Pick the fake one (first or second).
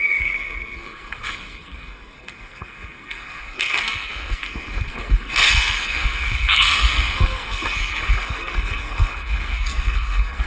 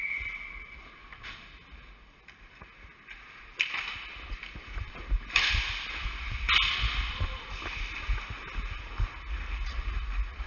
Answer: first